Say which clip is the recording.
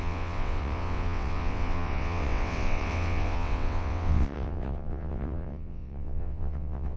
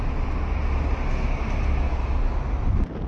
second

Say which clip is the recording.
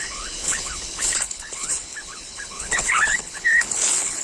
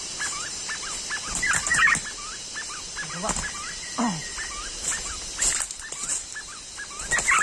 second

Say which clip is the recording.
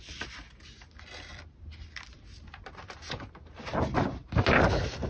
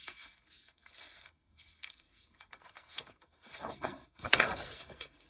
first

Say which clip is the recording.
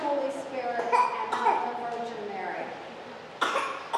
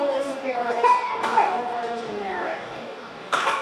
first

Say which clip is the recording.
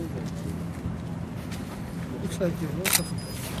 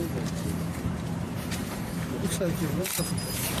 first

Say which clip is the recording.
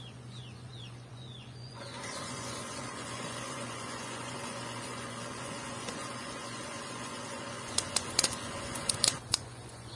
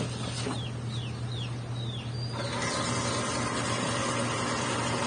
second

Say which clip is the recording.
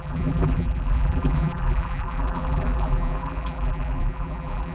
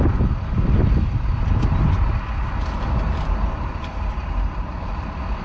second